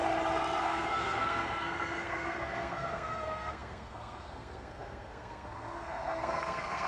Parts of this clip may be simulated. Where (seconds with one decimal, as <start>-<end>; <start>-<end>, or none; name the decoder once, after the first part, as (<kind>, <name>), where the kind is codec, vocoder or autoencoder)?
0.6-6.9 (codec, SNAC)